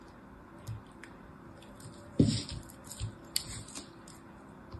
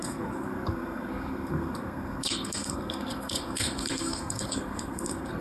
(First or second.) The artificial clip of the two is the second